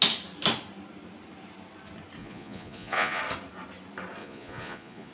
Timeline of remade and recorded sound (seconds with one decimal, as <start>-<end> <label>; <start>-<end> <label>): 0.0-2.2 recorded; 2.2-3.2 remade; 3.2-4.2 recorded; 4.2-5.1 remade